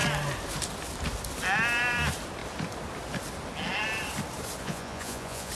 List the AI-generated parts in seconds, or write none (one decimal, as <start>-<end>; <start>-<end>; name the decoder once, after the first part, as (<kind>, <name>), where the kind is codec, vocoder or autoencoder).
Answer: 4.6-5.5 (vocoder, Vocos)